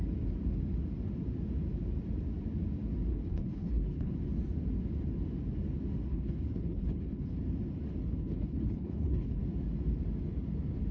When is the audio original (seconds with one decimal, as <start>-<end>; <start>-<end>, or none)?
0.0-3.1; 4.1-6.1; 7.4-8.0; 9.4-10.9